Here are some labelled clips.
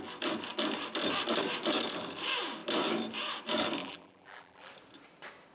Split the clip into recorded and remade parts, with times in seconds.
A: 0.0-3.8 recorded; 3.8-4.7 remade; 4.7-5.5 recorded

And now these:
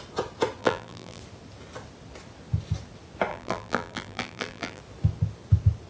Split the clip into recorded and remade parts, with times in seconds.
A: 0.0-0.6 recorded; 0.6-1.2 remade; 1.2-3.3 recorded; 3.3-4.8 remade; 4.8-5.9 recorded

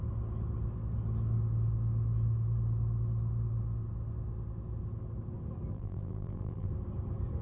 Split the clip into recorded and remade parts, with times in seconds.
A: 0.0-5.7 recorded; 5.7-6.7 remade; 6.7-7.4 recorded

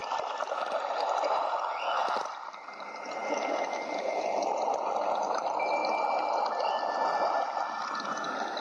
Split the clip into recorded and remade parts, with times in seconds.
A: 0.0-3.2 remade; 3.2-4.4 recorded; 4.4-5.8 remade; 5.8-7.7 recorded; 7.7-8.6 remade

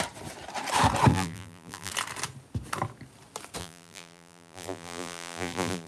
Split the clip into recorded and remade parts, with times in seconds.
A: 0.0-1.1 recorded; 1.1-1.9 remade; 1.9-3.6 recorded; 3.6-5.9 remade

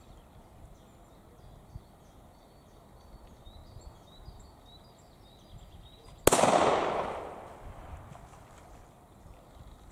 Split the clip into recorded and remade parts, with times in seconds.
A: 0.0-9.9 recorded

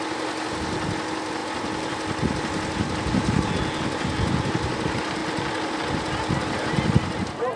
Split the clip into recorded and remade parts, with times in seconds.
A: 0.0-1.4 recorded; 1.4-3.5 remade; 3.5-7.6 recorded